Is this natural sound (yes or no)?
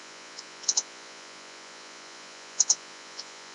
no